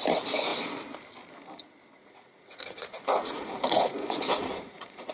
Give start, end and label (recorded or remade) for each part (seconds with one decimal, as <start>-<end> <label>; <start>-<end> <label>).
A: 0.0-2.0 recorded; 2.0-5.1 remade